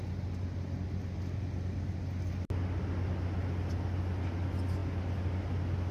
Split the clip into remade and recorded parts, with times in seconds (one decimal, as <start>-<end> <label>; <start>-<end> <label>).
0.0-5.9 recorded